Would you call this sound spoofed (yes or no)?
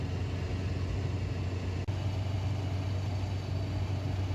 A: no